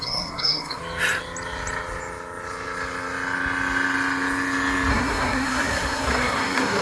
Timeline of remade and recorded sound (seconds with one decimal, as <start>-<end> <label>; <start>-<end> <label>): 0.0-0.8 remade; 0.8-4.9 recorded; 4.9-6.8 remade